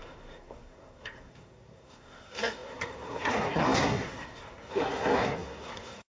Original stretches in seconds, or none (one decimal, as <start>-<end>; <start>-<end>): none

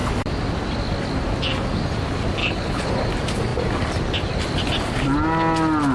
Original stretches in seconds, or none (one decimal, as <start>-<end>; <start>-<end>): 0.0-2.4; 2.9-5.9

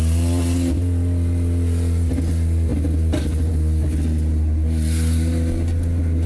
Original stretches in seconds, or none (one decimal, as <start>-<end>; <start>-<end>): 0.0-6.3

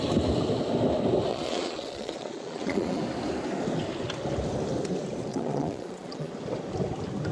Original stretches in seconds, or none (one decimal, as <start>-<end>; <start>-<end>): 0.0-1.3; 3.0-5.3; 6.3-7.3